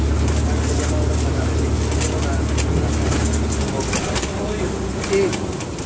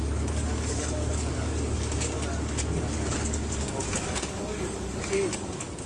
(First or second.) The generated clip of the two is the second